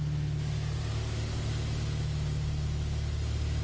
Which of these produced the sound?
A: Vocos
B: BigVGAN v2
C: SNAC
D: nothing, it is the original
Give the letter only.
D